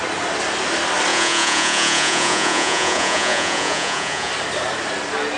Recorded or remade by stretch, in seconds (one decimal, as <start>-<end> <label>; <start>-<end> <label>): 0.0-1.1 recorded; 1.1-4.3 remade; 4.3-5.4 recorded